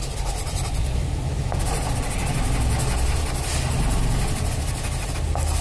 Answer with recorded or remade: recorded